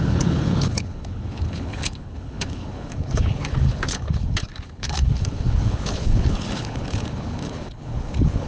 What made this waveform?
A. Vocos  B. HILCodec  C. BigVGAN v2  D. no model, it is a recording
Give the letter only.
B